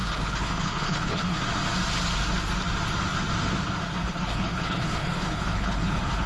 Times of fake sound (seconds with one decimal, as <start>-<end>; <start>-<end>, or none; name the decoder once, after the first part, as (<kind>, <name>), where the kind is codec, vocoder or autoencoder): 0.0-1.4 (codec, HILCodec); 4.0-6.3